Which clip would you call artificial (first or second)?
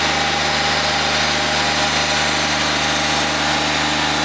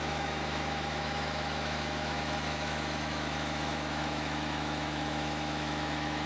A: second